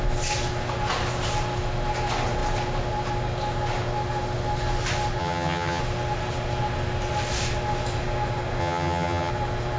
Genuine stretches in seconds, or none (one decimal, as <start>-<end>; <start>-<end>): 0.0-5.2; 5.8-8.6; 9.3-9.8